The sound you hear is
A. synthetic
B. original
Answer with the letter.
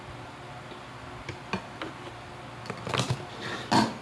B